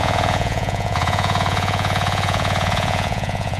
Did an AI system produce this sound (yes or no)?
yes